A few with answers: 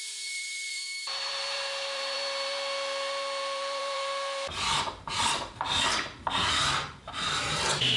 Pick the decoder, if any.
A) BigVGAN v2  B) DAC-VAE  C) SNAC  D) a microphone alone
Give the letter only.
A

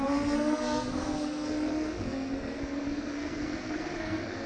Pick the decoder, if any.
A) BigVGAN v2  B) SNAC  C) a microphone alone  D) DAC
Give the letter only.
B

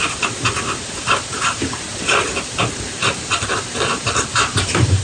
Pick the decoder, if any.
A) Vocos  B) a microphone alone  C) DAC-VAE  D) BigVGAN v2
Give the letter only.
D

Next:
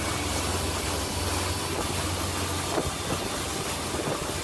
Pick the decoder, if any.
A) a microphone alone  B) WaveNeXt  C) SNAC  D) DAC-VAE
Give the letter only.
A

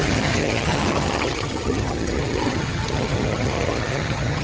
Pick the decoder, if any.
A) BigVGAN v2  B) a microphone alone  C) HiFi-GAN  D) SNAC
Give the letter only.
C